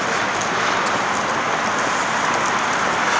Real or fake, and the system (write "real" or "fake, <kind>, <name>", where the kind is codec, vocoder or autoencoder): real